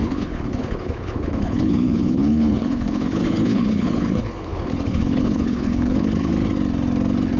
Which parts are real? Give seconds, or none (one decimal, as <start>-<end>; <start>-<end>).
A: 6.3-7.4